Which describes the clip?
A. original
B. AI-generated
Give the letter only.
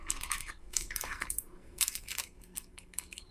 B